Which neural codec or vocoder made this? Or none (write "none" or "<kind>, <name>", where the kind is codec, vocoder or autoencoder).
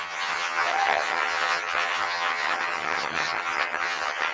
vocoder, HiFi-GAN